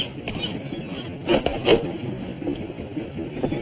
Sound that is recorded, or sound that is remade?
recorded